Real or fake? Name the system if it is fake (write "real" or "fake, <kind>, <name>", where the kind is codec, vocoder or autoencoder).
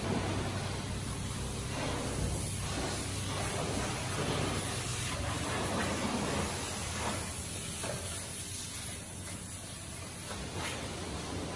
real